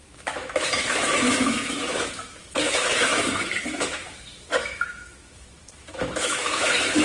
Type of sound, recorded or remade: remade